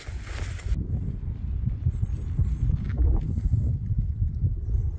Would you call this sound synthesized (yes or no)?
no